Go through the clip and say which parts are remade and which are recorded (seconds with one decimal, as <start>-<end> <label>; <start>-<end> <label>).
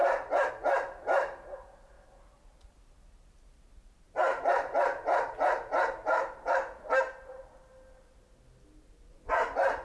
0.0-0.5 remade; 0.5-4.3 recorded; 4.3-6.5 remade; 6.5-9.8 recorded